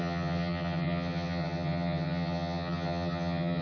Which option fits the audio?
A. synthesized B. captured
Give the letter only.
A